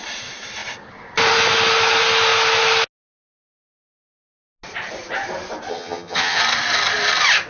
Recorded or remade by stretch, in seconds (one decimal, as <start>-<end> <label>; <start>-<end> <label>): 0.0-5.7 recorded; 5.7-6.4 remade; 6.4-7.5 recorded